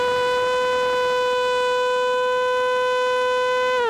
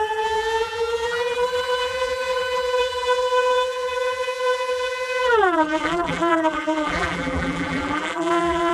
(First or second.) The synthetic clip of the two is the second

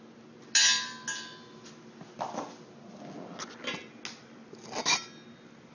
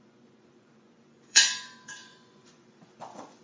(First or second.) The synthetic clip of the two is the second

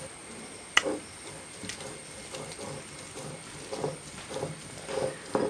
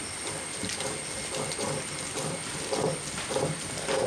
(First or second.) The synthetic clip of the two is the second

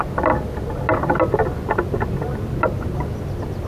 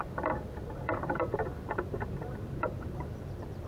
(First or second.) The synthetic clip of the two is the second